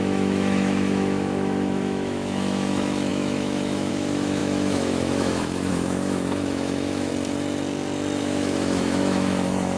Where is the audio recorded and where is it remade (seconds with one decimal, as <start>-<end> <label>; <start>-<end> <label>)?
0.0-7.1 remade; 7.1-8.2 recorded; 8.2-9.8 remade